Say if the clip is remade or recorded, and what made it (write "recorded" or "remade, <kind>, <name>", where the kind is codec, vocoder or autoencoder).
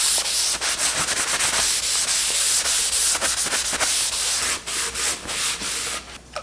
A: recorded